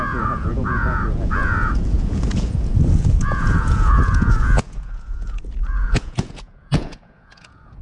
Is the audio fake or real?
fake